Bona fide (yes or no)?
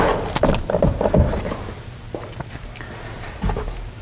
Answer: yes